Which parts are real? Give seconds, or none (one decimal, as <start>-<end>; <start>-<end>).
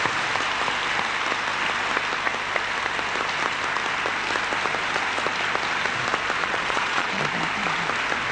0.0-6.4; 7.2-8.3